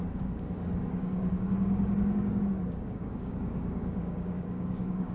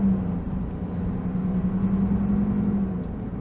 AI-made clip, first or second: first